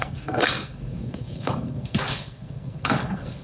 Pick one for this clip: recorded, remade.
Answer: remade